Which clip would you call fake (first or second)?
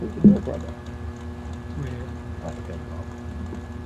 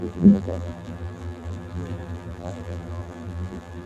second